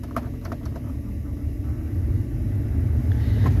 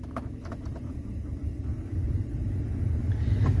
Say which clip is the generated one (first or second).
second